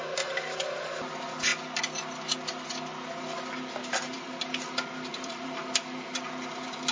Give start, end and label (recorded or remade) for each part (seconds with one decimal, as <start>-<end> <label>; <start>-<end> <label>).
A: 0.0-3.8 recorded; 3.8-4.3 remade; 4.3-5.1 recorded; 5.1-5.6 remade; 5.6-6.9 recorded